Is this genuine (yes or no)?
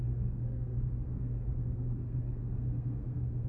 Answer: no